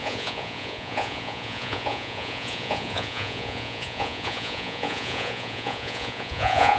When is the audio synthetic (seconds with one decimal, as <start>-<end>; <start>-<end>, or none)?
0.0-6.8